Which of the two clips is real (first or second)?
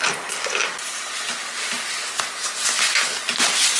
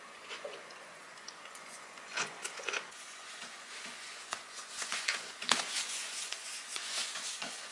first